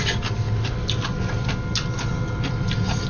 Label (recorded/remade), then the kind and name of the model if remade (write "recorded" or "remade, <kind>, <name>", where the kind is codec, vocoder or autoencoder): recorded